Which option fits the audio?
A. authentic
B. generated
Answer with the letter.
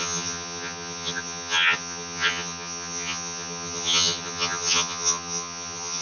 B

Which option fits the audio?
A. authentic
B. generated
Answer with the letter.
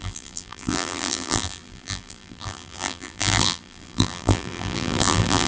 B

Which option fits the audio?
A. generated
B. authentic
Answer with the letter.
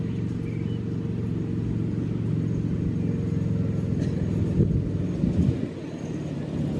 B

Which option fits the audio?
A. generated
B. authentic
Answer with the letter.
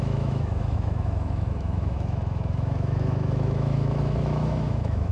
A